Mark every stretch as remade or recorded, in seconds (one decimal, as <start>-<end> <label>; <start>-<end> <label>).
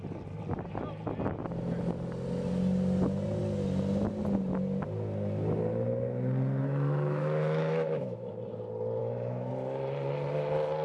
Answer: 0.0-6.6 recorded; 6.6-8.3 remade; 8.3-9.0 recorded; 9.0-9.5 remade; 9.5-10.8 recorded